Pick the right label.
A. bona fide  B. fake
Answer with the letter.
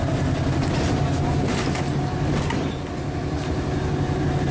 A